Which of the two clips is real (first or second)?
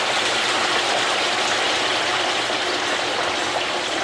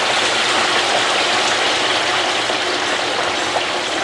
second